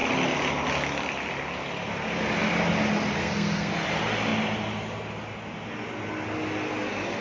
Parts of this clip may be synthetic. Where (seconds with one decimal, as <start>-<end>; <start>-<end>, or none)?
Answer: 3.2-3.7